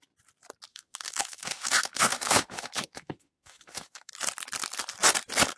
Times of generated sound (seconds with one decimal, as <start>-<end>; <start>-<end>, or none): 0.7-4.1